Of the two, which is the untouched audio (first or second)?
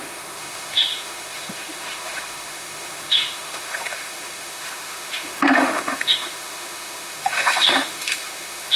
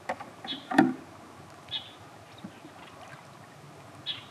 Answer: second